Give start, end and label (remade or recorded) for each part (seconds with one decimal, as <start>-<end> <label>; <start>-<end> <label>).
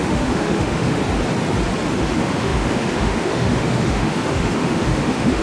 0.0-1.0 remade; 1.0-2.0 recorded; 2.0-5.4 remade